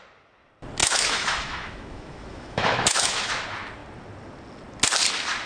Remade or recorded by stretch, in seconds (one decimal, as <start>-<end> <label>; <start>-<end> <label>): 0.0-0.8 recorded; 0.8-3.3 remade; 3.3-5.5 recorded